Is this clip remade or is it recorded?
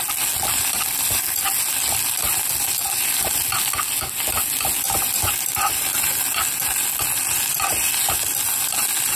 recorded